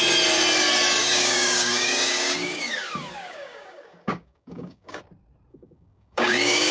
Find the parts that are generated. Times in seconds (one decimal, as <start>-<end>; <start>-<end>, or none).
1.0-5.0; 5.5-6.7